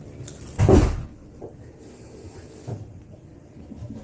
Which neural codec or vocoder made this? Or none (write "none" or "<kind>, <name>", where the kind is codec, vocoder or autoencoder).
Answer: none